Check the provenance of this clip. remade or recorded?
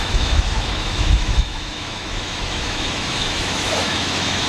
remade